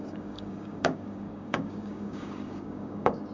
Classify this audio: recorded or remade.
remade